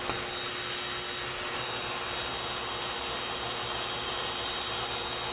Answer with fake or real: real